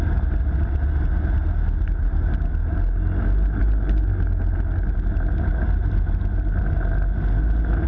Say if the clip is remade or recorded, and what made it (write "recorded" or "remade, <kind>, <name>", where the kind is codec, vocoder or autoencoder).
recorded